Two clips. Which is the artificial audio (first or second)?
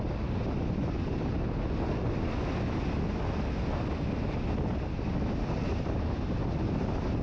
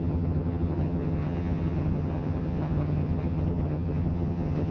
second